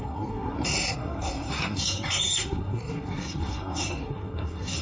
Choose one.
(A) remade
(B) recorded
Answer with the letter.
A